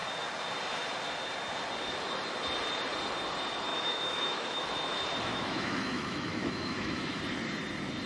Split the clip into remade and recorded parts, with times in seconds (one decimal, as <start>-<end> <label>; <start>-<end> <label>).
0.0-3.7 recorded; 3.7-4.6 remade; 4.6-5.3 recorded; 5.3-7.2 remade; 7.2-8.1 recorded